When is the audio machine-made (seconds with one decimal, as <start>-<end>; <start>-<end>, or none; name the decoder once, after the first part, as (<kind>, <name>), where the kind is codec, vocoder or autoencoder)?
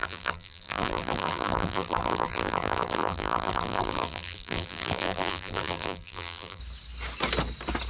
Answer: 0.0-6.6 (vocoder, BigVGAN v2)